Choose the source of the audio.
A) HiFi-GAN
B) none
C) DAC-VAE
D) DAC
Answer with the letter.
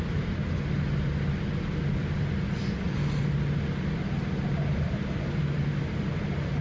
B